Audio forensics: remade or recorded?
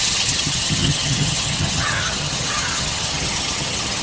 remade